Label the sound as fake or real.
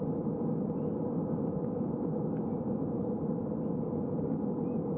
real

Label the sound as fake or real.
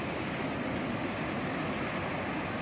real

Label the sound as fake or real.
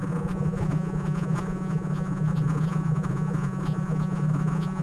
fake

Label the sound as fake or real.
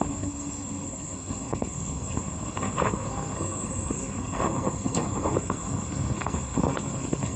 fake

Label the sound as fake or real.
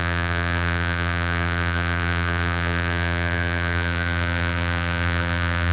fake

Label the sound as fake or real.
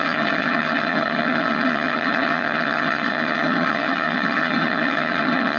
fake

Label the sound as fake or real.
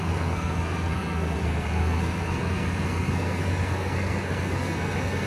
fake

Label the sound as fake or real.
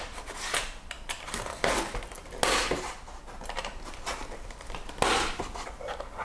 real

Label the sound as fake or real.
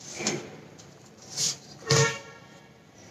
fake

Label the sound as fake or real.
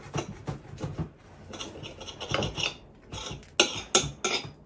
real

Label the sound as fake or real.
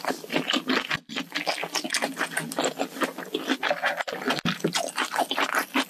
real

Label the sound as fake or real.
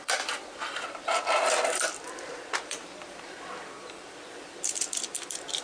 fake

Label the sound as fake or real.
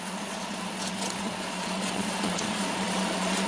fake